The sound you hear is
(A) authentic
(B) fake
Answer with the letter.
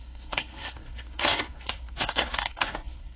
B